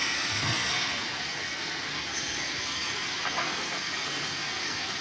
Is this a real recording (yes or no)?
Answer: no